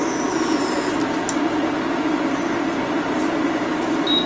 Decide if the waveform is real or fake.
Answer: real